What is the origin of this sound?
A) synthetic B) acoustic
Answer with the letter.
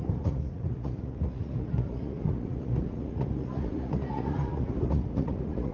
A